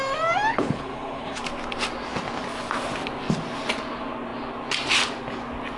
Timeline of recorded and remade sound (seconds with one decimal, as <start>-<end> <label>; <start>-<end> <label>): 0.0-0.5 recorded; 0.5-1.4 remade; 1.4-5.8 recorded